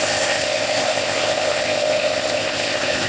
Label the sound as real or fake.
fake